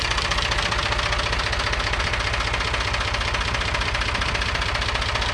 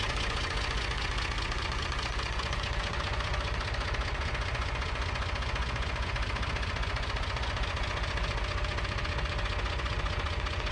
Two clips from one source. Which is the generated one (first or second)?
second